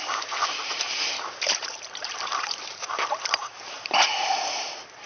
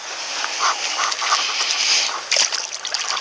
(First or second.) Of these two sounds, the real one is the second